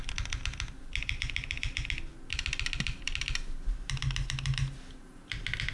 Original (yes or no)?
yes